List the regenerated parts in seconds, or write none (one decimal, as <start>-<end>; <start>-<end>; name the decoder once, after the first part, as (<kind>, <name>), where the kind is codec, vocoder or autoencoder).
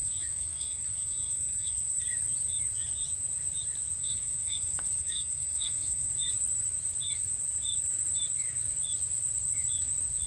0.0-2.0 (codec, SNAC); 4.0-6.1